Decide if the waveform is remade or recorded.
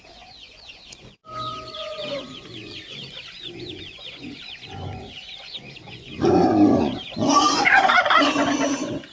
remade